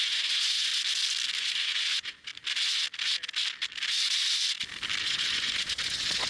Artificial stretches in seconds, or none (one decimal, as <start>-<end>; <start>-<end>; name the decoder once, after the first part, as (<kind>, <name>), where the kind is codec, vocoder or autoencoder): 0.0-0.7 (vocoder, Vocos); 1.4-2.3; 5.0-6.3